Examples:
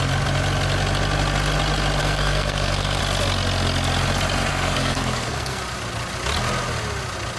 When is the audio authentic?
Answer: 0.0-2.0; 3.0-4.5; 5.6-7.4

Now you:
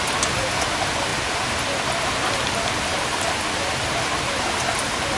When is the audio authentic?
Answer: 0.0-5.2

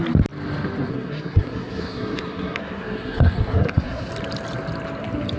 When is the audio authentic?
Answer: 0.0-0.9; 4.1-5.4

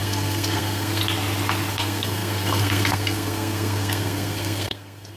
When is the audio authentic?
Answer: 1.0-1.7

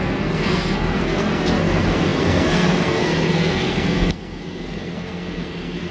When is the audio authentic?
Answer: none

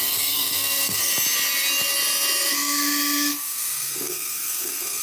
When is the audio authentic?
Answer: 1.1-2.5

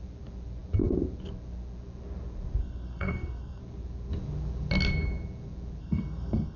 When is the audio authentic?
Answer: 0.0-2.6; 3.6-5.8